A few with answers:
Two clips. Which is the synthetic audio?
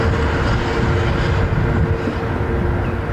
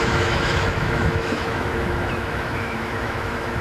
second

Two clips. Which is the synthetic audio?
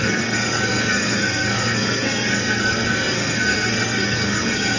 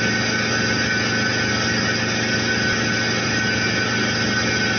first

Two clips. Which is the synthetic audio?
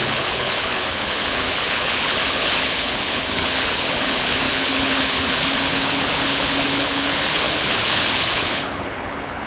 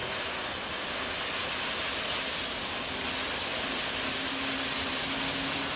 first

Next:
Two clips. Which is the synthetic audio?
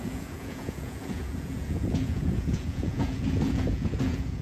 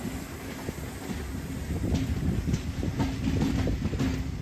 first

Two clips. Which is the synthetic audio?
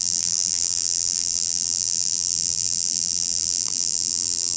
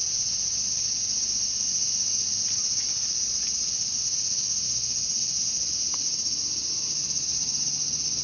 first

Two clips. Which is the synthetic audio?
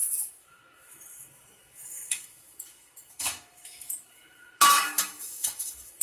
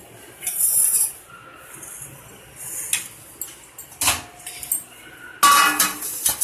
first